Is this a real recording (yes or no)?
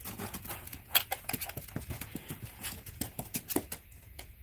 no